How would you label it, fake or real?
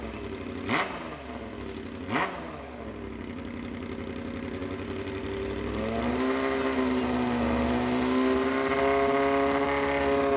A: real